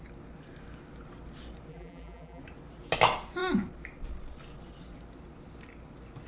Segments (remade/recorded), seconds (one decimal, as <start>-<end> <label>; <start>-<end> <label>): 0.0-1.7 recorded; 1.7-2.4 remade; 2.4-6.3 recorded